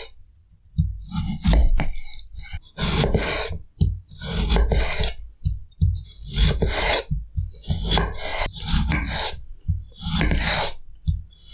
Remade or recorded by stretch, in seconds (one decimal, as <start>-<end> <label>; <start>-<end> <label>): 0.0-5.6 recorded; 5.6-7.0 remade; 7.0-8.3 recorded; 8.3-9.6 remade; 9.6-11.5 recorded